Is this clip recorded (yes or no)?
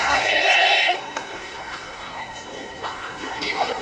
no